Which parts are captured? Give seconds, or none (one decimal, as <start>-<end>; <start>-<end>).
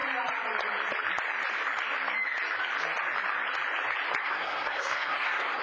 0.0-4.2